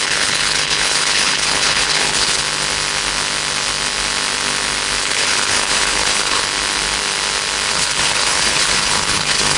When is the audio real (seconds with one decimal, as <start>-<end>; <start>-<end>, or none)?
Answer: 2.4-5.0; 6.4-7.7